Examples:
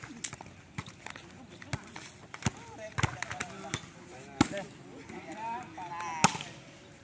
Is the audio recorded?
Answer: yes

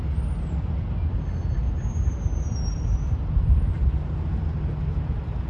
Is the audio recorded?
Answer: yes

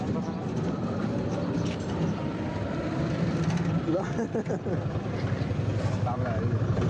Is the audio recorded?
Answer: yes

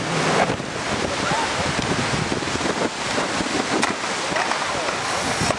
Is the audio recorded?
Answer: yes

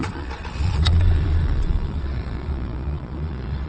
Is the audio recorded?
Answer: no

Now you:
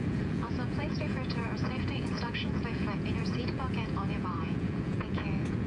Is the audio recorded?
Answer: no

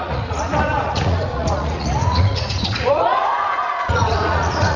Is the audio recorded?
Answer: no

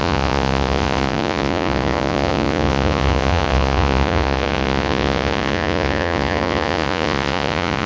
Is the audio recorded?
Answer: no